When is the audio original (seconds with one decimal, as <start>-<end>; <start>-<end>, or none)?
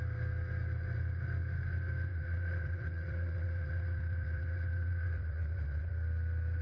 0.0-2.1; 5.9-6.6